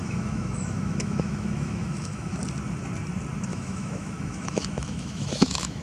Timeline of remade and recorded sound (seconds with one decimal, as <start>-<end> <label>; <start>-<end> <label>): 0.0-2.4 remade; 2.4-3.5 recorded; 3.5-5.8 remade